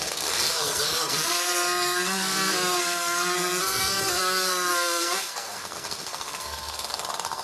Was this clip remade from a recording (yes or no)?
yes